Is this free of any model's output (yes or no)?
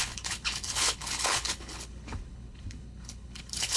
no